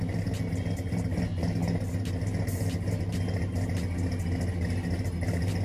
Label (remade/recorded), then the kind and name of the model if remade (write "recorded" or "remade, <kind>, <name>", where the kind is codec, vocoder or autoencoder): recorded